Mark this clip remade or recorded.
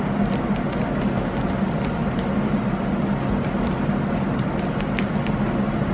recorded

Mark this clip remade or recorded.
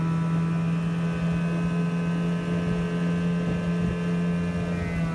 recorded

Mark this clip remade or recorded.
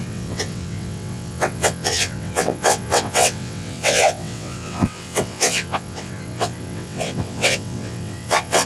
remade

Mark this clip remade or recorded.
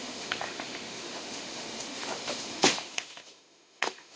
remade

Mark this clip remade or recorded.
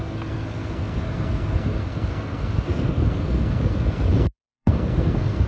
remade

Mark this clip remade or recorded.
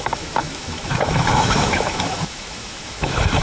remade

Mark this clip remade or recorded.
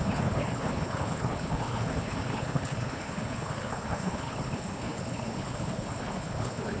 remade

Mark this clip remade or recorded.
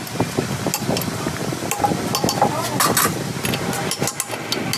recorded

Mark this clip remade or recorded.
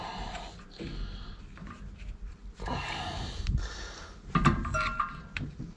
recorded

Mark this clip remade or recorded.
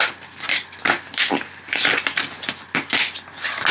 recorded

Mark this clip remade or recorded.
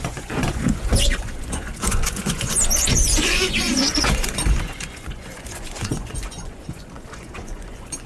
remade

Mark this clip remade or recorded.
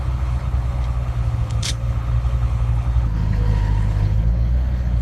remade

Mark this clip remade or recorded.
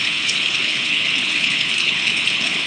remade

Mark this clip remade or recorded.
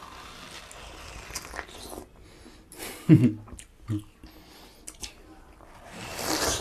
recorded